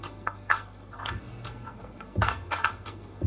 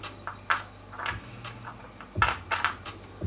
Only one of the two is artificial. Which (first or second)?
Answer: first